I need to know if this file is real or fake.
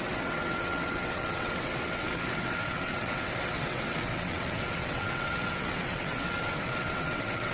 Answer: fake